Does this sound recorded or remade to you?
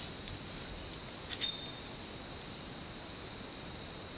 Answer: recorded